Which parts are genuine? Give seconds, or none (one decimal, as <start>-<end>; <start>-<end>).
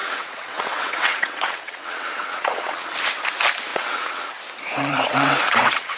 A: 2.9-3.7; 4.3-4.7